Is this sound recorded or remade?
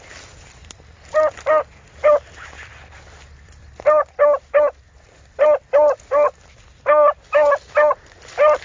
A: recorded